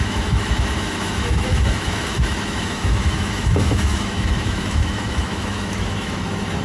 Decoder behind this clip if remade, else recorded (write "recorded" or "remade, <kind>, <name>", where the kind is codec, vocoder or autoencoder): remade, autoencoder, DAC-VAE